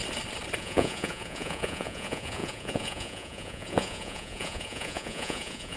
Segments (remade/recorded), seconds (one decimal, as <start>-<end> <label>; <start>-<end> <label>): 0.0-0.6 recorded; 0.6-5.8 remade